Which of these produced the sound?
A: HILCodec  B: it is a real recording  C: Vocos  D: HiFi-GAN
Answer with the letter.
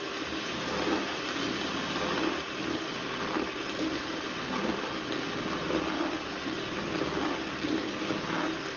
B